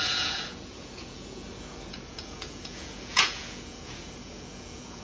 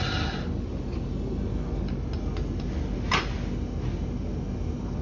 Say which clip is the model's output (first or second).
first